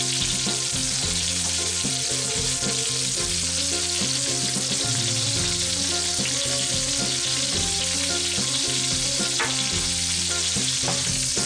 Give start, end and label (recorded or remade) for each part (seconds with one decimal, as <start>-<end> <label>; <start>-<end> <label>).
0.0-0.8 recorded; 0.8-1.9 remade; 1.9-11.5 recorded